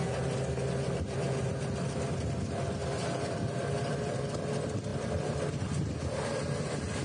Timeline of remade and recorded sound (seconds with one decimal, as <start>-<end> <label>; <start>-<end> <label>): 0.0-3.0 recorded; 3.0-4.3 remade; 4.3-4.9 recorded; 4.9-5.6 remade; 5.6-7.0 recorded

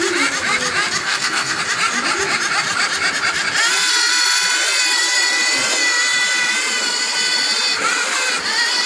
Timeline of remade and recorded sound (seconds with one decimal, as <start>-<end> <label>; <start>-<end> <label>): 0.0-1.0 recorded; 1.0-1.6 remade; 1.6-8.9 recorded

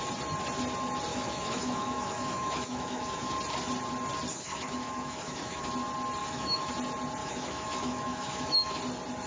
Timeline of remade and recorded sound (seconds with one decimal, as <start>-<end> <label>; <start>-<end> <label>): 0.0-1.1 recorded; 1.1-3.3 remade; 3.3-4.3 recorded; 4.3-5.7 remade; 5.7-6.2 recorded; 6.2-6.7 remade; 6.7-7.2 recorded; 7.2-8.8 remade; 8.8-9.3 recorded